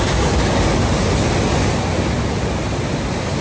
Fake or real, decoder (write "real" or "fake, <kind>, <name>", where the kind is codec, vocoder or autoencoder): real